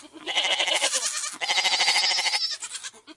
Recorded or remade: recorded